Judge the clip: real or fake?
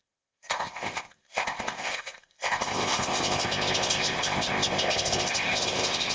fake